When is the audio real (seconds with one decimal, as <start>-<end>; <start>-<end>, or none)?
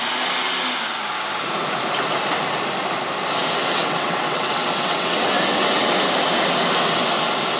0.0-3.6; 5.9-7.6